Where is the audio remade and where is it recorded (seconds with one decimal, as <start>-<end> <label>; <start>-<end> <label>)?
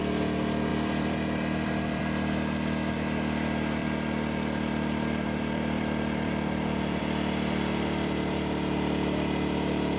0.0-0.7 recorded; 0.7-2.0 remade; 2.0-3.8 recorded; 3.8-7.0 remade; 7.0-10.0 recorded